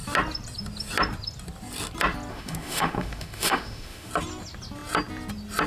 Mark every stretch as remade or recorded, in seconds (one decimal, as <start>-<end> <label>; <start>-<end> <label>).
0.0-2.3 recorded; 2.3-4.1 remade; 4.1-5.7 recorded